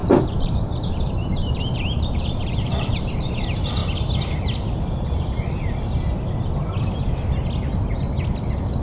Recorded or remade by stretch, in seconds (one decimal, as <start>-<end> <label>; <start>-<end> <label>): 0.0-3.8 remade; 3.8-8.8 recorded